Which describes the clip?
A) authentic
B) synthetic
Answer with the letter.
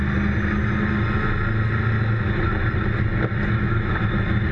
A